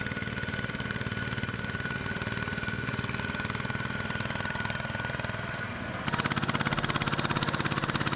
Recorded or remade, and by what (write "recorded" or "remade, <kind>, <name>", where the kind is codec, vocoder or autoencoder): recorded